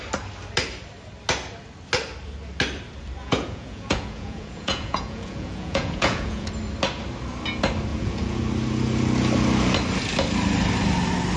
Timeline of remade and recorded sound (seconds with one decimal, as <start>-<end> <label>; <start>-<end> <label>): 0.0-3.2 recorded; 3.2-6.5 remade; 6.5-7.9 recorded; 7.9-8.4 remade; 8.4-11.4 recorded